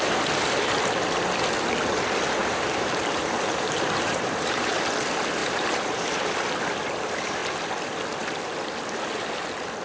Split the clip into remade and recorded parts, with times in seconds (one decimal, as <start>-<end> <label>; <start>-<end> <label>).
0.0-2.4 recorded; 2.4-4.7 remade; 4.7-5.4 recorded; 5.4-6.3 remade; 6.3-9.8 recorded